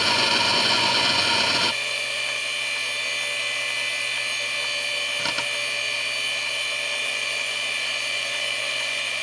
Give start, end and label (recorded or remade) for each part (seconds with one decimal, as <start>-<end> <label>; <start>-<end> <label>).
0.0-2.4 remade; 2.4-7.0 recorded; 7.0-9.2 remade